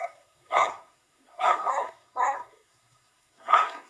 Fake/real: fake